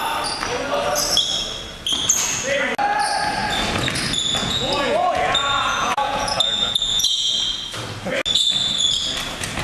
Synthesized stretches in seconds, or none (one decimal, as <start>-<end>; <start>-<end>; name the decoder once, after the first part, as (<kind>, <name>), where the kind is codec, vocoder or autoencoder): 4.4-7.3 (vocoder, Vocos)